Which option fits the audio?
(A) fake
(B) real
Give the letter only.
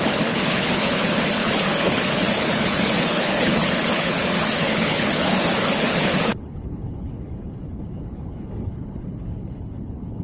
A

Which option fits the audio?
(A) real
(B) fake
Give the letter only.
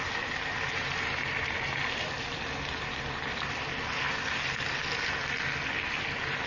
A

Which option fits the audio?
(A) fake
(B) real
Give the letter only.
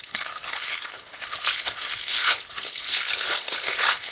A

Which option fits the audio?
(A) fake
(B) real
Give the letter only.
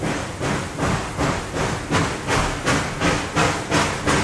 B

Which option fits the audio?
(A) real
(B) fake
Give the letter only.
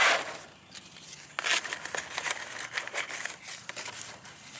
A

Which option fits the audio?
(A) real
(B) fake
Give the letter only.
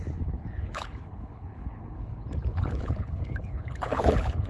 B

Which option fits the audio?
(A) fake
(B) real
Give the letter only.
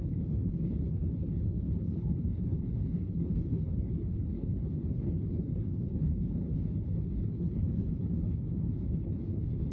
A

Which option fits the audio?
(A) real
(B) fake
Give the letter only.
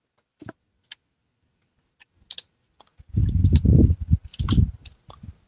A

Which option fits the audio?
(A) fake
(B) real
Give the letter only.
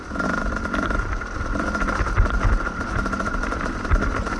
B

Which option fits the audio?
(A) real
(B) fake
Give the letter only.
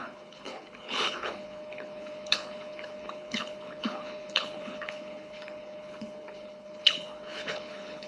B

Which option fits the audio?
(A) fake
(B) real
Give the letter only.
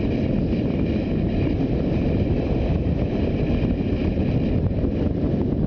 B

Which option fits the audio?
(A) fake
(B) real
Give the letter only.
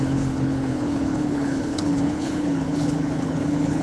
A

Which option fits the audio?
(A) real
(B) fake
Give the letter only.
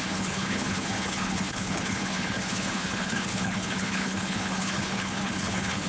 B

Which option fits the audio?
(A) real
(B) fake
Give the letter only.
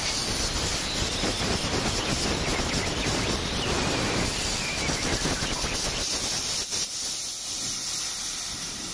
A